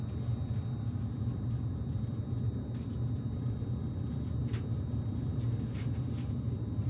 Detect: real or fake real